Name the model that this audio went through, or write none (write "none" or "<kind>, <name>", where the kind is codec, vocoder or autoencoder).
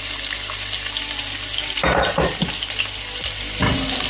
none